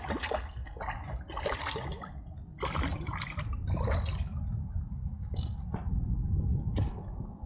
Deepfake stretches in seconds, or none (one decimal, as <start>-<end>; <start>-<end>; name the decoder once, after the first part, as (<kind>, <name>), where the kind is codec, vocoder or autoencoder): none